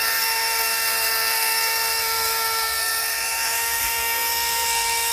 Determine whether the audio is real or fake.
fake